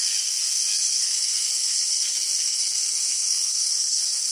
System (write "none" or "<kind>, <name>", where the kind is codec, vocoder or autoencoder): codec, SNAC